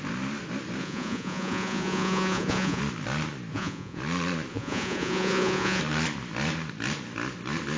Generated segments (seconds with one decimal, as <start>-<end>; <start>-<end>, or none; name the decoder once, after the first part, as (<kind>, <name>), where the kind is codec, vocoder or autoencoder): 0.8-2.8 (vocoder, Vocos); 3.5-4.0; 4.5-5.8